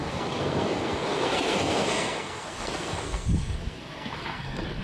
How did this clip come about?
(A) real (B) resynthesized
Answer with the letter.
B